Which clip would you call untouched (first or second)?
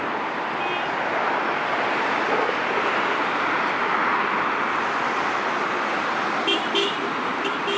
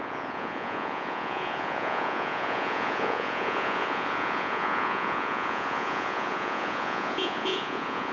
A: first